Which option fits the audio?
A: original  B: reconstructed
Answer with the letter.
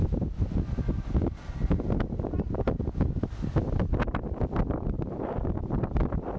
A